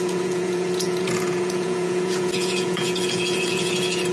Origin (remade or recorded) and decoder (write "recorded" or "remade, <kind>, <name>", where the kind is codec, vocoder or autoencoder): remade, vocoder, Vocos